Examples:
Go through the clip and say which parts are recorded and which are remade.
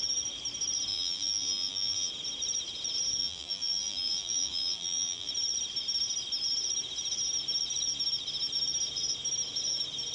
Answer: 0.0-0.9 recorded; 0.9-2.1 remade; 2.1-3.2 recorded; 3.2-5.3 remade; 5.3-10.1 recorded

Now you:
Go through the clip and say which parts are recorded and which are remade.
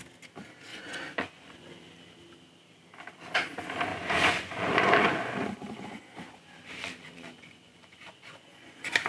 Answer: 0.0-0.7 recorded; 0.7-1.9 remade; 1.9-3.9 recorded; 3.9-9.1 remade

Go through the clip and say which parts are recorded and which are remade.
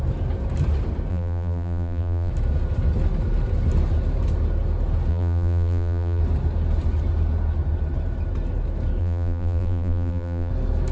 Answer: 0.0-1.1 recorded; 1.1-2.3 remade; 2.3-5.1 recorded; 5.1-6.2 remade; 6.2-9.0 recorded; 9.0-10.5 remade; 10.5-10.9 recorded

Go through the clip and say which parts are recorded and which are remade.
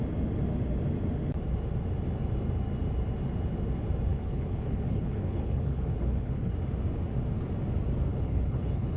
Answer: 0.0-4.1 recorded; 4.1-6.5 remade; 6.5-8.1 recorded; 8.1-9.0 remade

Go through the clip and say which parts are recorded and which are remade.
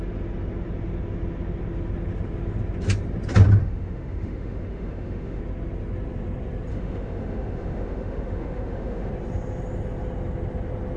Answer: 0.0-3.6 recorded; 3.6-5.4 remade; 5.4-6.7 recorded; 6.7-9.1 remade; 9.1-11.0 recorded